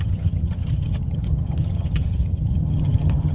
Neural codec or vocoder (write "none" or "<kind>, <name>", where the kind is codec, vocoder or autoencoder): vocoder, HiFi-GAN